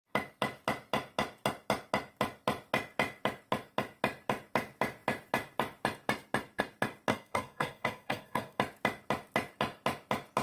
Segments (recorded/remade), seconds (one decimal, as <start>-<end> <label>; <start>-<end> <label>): 0.0-7.1 recorded; 7.1-8.6 remade; 8.6-10.4 recorded

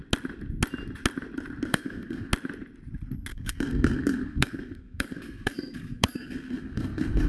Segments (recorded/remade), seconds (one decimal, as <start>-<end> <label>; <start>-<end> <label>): 0.0-1.7 recorded; 1.7-2.3 remade; 2.3-3.3 recorded; 3.3-7.3 remade

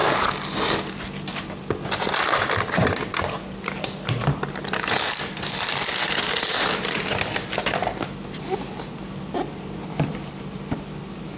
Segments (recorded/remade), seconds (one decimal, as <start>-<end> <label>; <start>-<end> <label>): 0.0-11.4 recorded

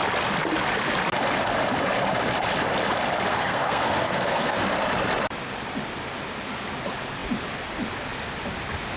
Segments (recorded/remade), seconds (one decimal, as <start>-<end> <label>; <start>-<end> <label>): 0.0-3.3 recorded; 3.3-4.6 remade; 4.6-9.0 recorded

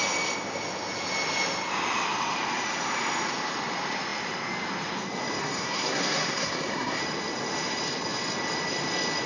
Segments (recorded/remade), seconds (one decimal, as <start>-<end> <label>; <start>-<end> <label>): 0.0-5.4 recorded; 5.4-7.0 remade; 7.0-9.3 recorded

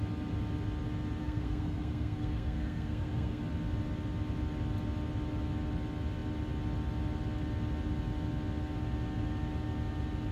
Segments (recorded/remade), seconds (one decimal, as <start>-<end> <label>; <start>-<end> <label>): 0.0-1.2 recorded; 1.2-3.4 remade; 3.4-10.3 recorded

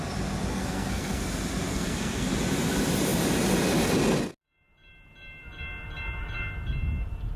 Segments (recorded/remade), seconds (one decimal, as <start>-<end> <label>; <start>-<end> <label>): 0.0-0.5 recorded; 0.5-1.2 remade; 1.2-1.7 recorded; 1.7-2.3 remade; 2.3-7.4 recorded